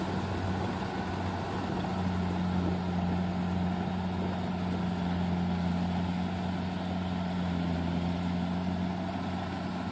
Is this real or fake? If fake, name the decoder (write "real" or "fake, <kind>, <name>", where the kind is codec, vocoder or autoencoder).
real